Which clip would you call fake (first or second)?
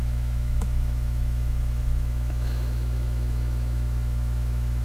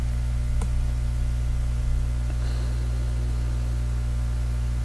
first